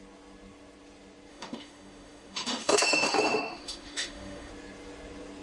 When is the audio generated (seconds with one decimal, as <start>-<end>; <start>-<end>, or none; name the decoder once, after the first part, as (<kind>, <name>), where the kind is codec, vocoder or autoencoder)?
1.3-4.5 (autoencoder, DAC-VAE)